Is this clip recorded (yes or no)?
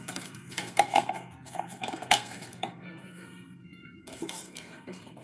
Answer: no